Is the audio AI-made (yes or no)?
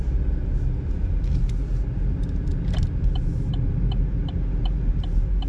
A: no